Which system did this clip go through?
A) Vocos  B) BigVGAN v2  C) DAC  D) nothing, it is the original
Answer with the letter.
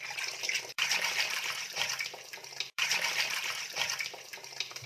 B